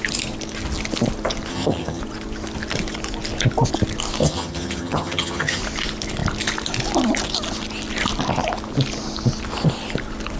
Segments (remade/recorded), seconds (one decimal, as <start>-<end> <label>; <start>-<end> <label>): 0.0-1.5 recorded; 1.5-2.0 remade; 2.0-4.2 recorded; 4.2-5.6 remade; 5.6-10.4 recorded